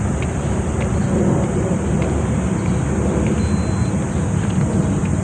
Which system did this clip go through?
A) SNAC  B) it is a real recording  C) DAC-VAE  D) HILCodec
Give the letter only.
B